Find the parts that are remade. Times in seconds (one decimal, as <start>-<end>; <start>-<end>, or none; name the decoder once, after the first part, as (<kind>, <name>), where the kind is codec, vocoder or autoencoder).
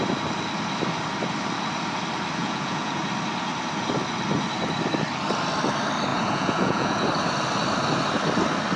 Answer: 2.4-3.0 (vocoder, Vocos); 6.1-7.1